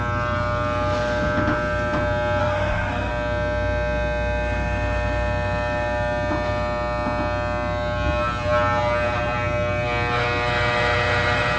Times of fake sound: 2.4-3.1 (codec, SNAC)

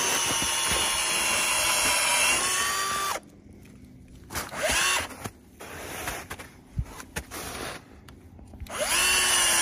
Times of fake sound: none

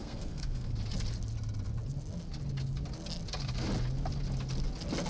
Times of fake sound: 0.0-0.7 (codec, SNAC)

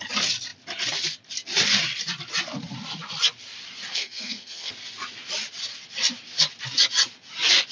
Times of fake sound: 3.9-4.7 (codec, SNAC)

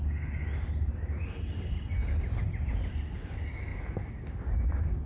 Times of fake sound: none